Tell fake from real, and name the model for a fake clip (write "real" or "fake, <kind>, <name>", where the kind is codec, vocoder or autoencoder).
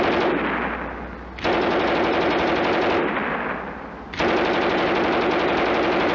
real